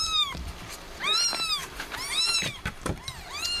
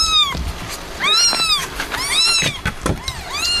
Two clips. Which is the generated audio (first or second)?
first